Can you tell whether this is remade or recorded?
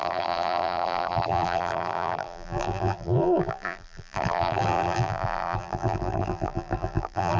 remade